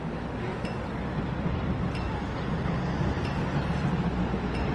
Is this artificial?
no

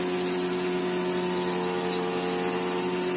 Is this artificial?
no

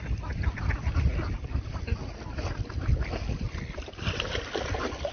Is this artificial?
no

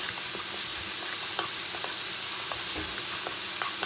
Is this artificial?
no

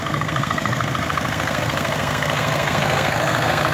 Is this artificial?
yes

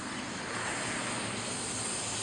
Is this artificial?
no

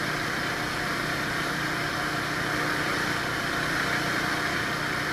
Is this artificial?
no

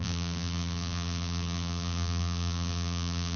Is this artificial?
yes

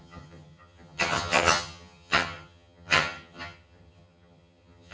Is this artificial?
yes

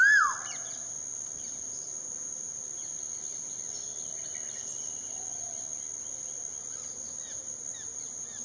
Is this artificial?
no